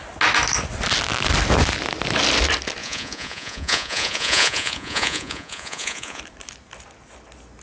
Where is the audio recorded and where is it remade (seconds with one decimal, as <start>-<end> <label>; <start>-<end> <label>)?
0.0-2.8 recorded; 2.8-6.2 remade; 6.2-7.6 recorded